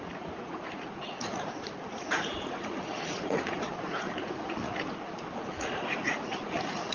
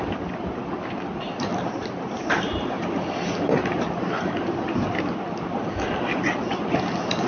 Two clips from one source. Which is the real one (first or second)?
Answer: second